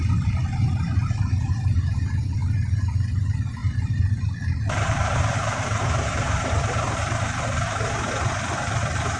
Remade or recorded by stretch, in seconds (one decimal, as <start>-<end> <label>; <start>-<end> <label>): 0.0-9.2 remade